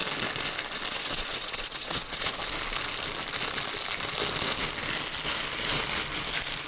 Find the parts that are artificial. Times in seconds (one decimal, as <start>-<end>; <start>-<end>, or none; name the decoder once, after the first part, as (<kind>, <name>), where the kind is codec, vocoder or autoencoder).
0.9-2.4 (vocoder, WaveNeXt)